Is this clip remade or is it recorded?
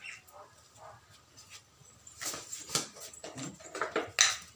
recorded